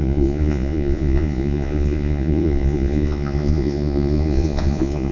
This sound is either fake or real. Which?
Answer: fake